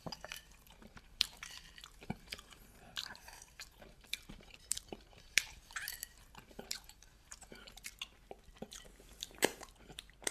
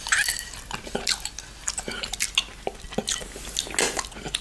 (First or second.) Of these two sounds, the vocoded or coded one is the first